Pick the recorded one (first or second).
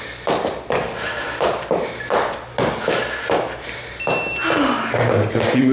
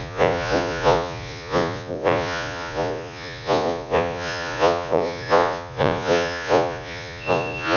first